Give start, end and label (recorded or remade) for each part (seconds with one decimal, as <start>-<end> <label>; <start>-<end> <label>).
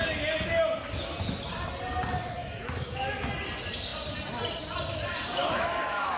0.0-2.4 recorded; 2.4-3.3 remade; 3.3-5.4 recorded; 5.4-6.2 remade